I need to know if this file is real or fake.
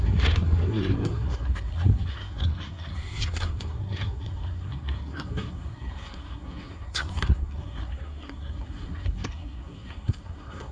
fake